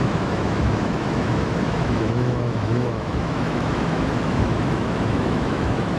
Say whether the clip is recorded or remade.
remade